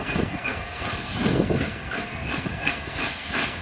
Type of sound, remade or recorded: remade